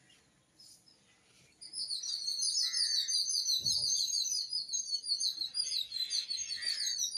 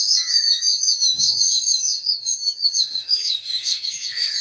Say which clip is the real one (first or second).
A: first